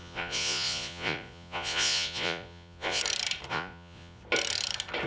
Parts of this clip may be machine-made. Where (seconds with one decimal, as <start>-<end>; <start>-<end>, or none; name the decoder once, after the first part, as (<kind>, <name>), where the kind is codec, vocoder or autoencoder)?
0.0-3.0 (vocoder, Vocos); 3.5-4.2